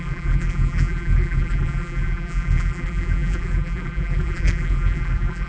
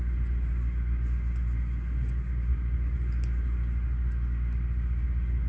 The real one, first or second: second